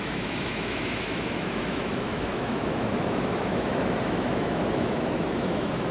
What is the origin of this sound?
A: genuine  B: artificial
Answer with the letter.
B